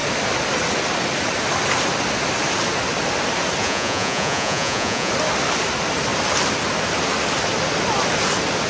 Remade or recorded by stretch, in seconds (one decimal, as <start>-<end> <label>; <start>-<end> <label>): 0.0-3.6 recorded; 3.6-5.1 remade; 5.1-8.7 recorded

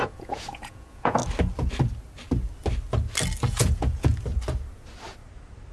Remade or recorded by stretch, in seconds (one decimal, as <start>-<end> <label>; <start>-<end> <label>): 0.0-1.2 remade; 1.2-3.5 recorded; 3.5-4.1 remade; 4.1-5.7 recorded

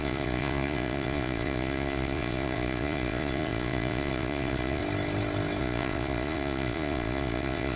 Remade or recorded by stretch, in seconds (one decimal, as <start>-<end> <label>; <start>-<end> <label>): 0.0-4.8 remade; 4.8-5.6 recorded; 5.6-7.8 remade